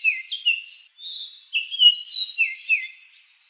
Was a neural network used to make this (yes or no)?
no